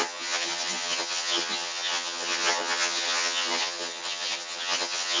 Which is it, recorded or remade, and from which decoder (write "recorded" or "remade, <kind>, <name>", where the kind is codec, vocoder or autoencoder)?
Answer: remade, vocoder, HiFi-GAN